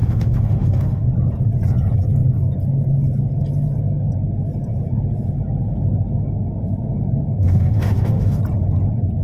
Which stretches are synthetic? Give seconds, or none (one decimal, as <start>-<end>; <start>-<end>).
0.0-1.1; 7.4-8.4